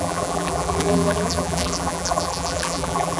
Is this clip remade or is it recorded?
remade